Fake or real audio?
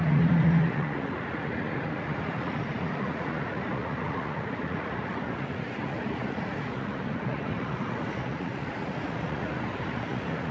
fake